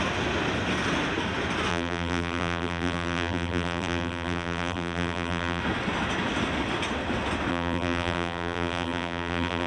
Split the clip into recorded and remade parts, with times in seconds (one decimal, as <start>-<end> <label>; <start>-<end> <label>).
0.0-1.7 recorded; 1.7-5.6 remade; 5.6-7.5 recorded; 7.5-9.7 remade